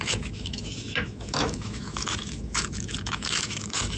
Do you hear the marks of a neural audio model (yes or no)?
yes